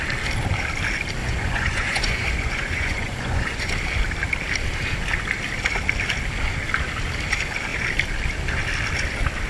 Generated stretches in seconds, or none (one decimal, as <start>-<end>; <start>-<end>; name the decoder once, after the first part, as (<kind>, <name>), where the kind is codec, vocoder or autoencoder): 1.2-3.7 (vocoder, Vocos)